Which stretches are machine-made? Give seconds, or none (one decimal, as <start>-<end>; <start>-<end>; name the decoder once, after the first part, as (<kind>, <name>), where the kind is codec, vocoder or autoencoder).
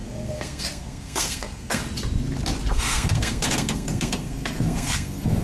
0.0-1.8 (codec, SNAC); 2.7-5.4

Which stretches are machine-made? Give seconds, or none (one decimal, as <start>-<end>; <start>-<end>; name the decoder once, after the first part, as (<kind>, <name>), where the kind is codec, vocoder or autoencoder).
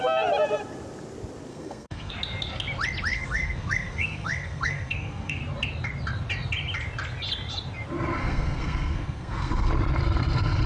1.5-2.1 (codec, SNAC); 3.1-5.4; 8.2-9.7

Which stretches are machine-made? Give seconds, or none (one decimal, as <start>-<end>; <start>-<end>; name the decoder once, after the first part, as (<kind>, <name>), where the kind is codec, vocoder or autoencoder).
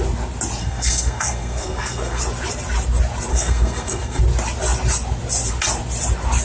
0.6-2.2 (codec, SNAC); 3.3-4.2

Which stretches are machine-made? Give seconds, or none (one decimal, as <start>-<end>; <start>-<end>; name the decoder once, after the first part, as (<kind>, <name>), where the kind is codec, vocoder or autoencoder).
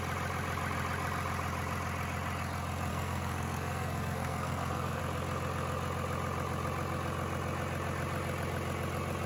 2.9-5.0 (codec, SNAC)